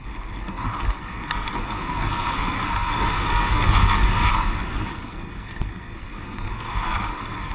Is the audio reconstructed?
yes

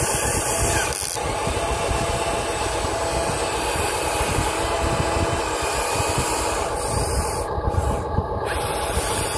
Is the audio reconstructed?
no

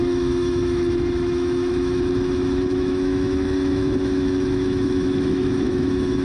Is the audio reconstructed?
yes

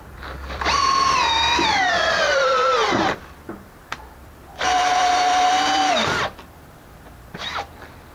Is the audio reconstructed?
yes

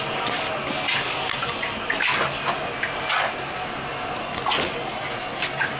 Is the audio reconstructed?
no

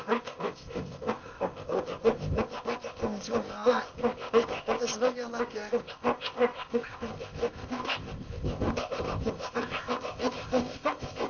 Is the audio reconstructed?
yes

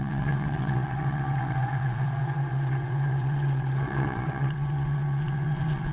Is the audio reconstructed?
yes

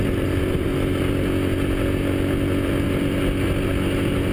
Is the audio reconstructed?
no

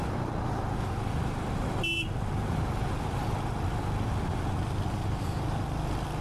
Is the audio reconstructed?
no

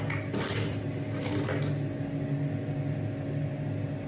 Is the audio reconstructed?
no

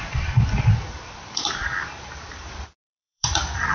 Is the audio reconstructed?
yes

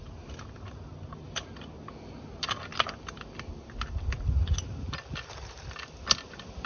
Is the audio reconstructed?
no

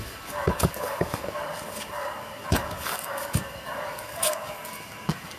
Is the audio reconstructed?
yes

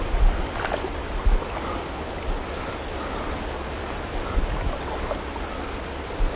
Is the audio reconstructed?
no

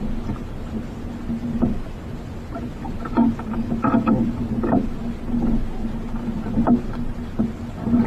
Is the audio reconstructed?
no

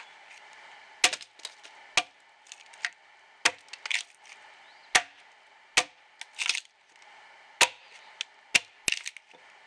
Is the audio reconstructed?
no